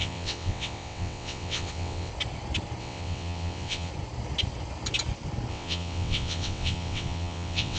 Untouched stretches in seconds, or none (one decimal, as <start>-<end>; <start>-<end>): 2.1-2.8; 3.9-5.5